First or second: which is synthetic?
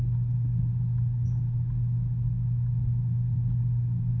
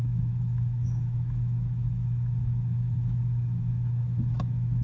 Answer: second